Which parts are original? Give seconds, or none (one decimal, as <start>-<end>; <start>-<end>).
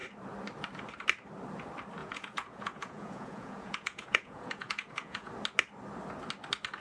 0.0-2.0; 5.3-6.8